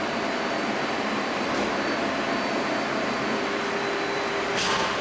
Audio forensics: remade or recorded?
recorded